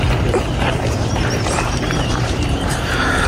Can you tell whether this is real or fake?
fake